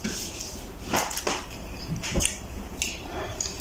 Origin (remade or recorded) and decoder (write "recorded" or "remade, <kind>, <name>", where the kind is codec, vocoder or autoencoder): remade, vocoder, BigVGAN v2